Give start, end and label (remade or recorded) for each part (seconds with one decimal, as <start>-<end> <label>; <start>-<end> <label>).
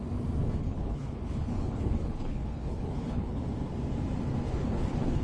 0.0-0.6 recorded; 0.6-3.4 remade; 3.4-4.5 recorded; 4.5-5.2 remade